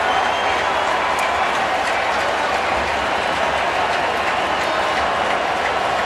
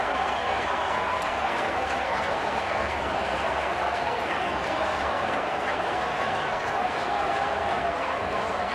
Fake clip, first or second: second